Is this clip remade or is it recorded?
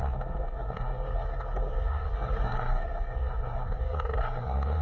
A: remade